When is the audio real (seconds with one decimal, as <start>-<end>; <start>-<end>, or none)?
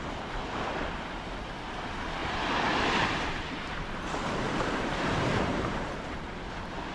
0.0-2.2; 6.3-6.9